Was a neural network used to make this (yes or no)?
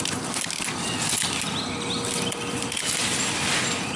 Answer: no